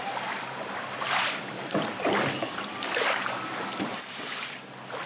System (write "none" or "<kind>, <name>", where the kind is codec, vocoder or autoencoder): vocoder, BigVGAN v2